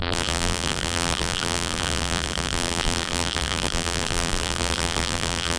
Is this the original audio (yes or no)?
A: no